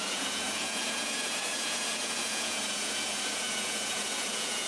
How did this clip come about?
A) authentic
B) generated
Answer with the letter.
B